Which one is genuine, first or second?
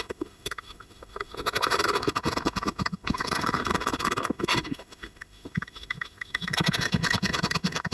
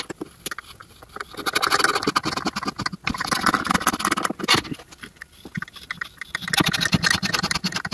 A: second